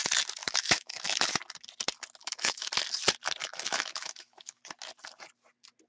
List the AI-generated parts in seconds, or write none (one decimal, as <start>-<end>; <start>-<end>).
0.4-1.3; 2.2-2.7; 3.4-4.6